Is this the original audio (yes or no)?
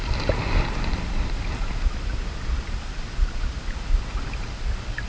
yes